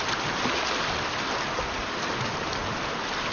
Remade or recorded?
recorded